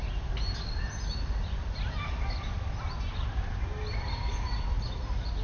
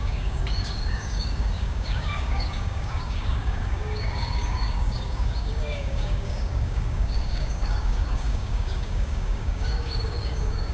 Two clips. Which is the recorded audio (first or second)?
first